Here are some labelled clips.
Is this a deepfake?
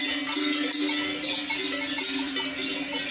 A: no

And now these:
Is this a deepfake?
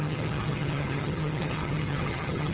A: yes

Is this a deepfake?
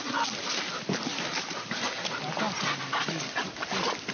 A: no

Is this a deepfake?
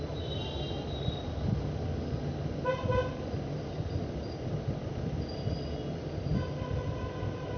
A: no